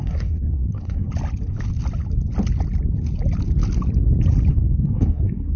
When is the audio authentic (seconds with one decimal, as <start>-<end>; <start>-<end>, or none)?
1.1-4.5